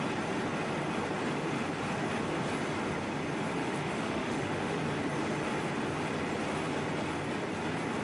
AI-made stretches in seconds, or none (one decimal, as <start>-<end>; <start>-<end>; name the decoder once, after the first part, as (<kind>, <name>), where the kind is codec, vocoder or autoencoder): 3.6-4.8 (autoencoder, DAC-VAE)